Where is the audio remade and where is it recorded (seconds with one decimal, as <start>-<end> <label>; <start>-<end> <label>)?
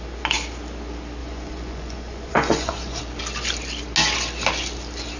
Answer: 0.0-1.2 recorded; 1.2-3.0 remade; 3.0-5.2 recorded